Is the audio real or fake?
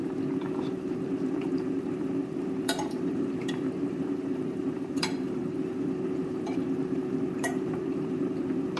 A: fake